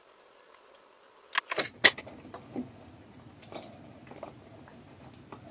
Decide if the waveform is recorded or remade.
recorded